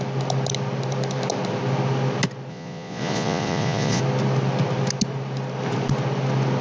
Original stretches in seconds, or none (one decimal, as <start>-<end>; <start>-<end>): 0.0-2.5; 4.0-6.6